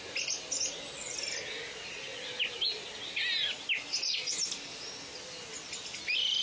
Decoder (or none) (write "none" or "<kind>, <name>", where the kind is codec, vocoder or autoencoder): none